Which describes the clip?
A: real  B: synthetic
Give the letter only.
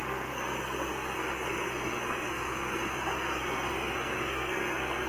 B